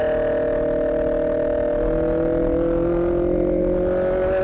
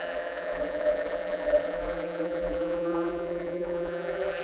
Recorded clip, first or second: first